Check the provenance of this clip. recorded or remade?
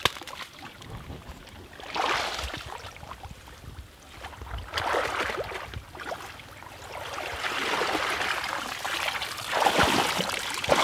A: recorded